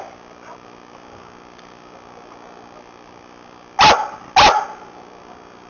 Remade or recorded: recorded